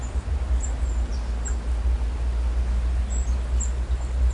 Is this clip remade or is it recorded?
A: recorded